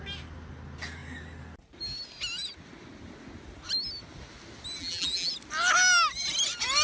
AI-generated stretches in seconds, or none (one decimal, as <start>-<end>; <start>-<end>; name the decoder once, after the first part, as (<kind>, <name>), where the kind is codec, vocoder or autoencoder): 4.8-5.3 (vocoder, BigVGAN v2)